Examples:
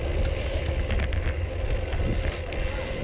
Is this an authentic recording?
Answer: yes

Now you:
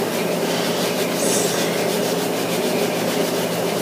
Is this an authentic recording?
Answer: yes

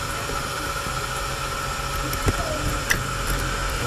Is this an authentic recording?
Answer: no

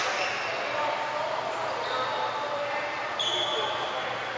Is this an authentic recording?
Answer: yes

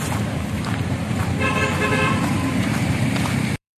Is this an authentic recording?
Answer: no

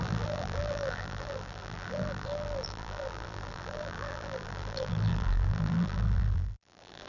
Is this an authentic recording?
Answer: no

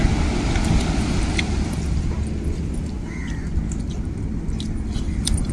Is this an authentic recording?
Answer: yes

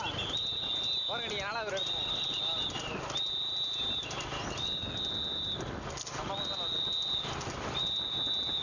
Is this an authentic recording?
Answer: yes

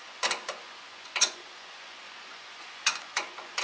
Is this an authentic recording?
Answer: no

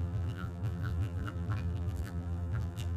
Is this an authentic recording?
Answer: no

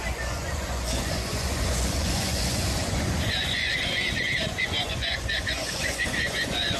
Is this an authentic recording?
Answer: no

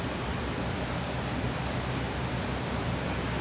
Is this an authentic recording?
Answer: yes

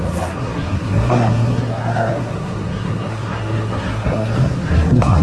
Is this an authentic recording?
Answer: no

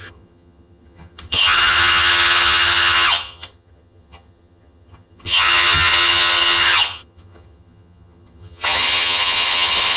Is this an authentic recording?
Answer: no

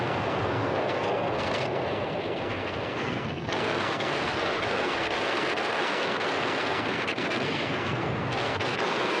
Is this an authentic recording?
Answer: no